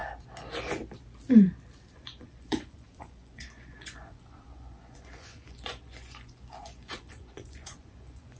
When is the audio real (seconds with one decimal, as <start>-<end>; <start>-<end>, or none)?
0.0-1.9